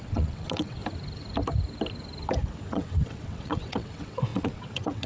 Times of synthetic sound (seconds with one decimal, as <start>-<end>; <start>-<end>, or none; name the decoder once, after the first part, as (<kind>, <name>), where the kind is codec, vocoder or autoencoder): 0.0-0.8 (vocoder, WaveNeXt); 2.7-5.1